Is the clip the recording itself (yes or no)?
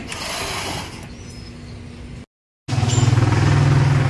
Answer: yes